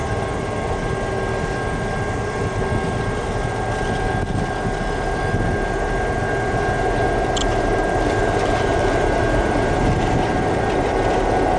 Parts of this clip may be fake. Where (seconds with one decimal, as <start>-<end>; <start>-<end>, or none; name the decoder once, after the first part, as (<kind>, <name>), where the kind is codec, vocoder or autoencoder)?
7.4-10.3 (vocoder, BigVGAN v2)